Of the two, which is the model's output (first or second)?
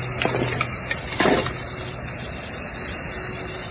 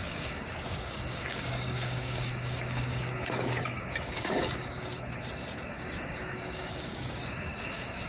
second